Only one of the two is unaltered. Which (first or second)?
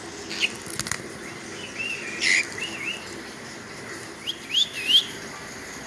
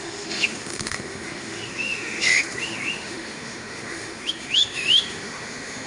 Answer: first